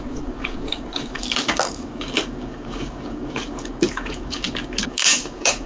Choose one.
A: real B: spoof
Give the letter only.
B